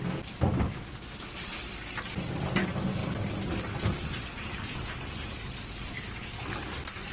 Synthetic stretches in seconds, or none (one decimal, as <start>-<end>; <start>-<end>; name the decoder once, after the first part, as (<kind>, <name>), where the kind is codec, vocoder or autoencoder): none